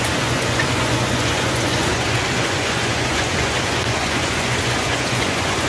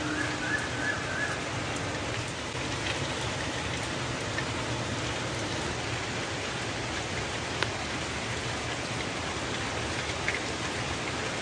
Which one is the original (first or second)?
second